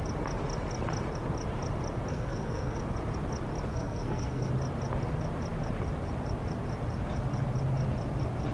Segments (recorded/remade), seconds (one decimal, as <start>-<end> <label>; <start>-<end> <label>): 0.0-2.1 recorded; 2.1-2.8 remade; 2.8-3.7 recorded; 3.7-4.5 remade; 4.5-8.5 recorded